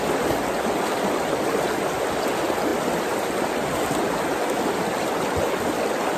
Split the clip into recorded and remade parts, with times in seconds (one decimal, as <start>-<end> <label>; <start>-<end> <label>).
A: 0.0-6.2 recorded